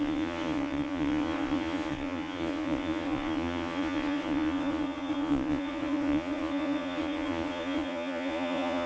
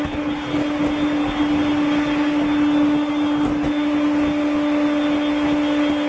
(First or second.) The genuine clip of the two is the second